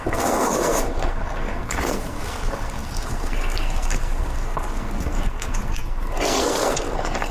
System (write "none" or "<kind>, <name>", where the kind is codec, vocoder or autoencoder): codec, SNAC